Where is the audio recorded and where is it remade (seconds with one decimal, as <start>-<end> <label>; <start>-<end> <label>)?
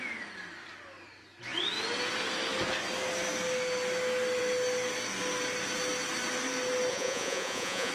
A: 0.0-6.9 recorded; 6.9-7.9 remade